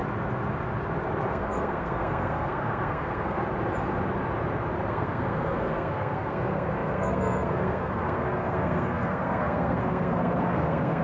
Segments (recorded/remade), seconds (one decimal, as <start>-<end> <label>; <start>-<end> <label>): 0.0-1.3 recorded; 1.3-3.4 remade; 3.4-4.9 recorded; 4.9-11.0 remade